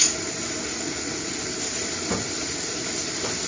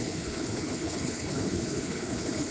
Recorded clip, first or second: first